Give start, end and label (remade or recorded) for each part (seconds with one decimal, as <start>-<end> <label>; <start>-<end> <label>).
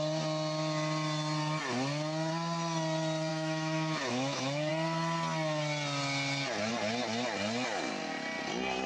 0.0-3.3 recorded; 3.3-4.7 remade; 4.7-8.9 recorded